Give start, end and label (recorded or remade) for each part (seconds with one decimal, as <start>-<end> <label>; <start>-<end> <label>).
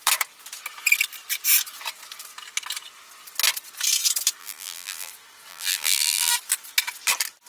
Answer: 0.0-4.4 recorded; 4.4-5.1 remade; 5.1-5.5 recorded; 5.5-6.3 remade; 6.3-7.5 recorded